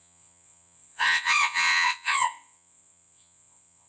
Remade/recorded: remade